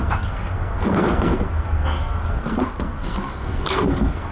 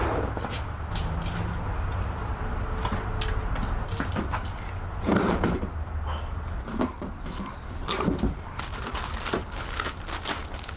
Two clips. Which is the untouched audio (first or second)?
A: second